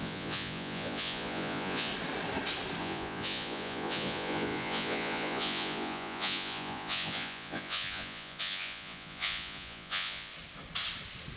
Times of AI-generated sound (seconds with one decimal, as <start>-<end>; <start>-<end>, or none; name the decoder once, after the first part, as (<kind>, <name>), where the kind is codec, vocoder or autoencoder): 0.0-1.9 (vocoder, Vocos); 2.8-10.3